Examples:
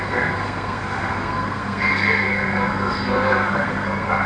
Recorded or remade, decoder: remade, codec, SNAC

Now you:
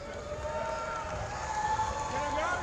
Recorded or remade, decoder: recorded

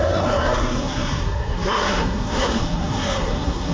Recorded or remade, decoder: remade, codec, SNAC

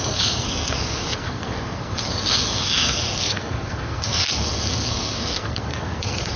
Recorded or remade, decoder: remade, codec, SNAC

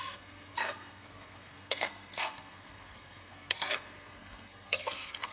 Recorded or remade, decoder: remade, codec, SNAC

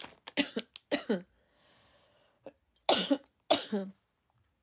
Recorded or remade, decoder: recorded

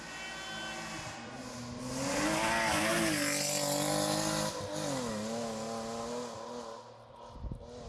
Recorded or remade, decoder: recorded